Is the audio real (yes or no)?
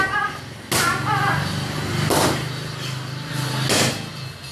yes